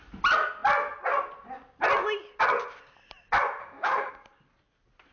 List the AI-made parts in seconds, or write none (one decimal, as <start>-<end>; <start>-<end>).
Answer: 3.6-4.1